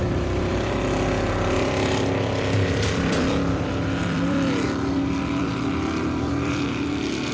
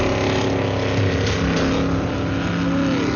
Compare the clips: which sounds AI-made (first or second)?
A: first